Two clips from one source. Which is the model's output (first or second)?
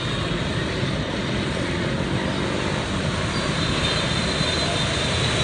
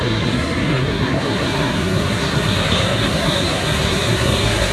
second